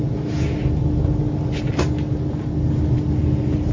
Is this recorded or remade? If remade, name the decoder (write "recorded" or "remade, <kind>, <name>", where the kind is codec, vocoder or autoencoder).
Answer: recorded